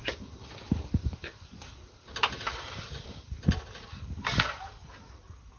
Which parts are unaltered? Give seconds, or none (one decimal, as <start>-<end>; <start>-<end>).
0.0-1.0; 1.6-5.6